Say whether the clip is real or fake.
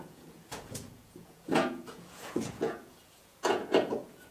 fake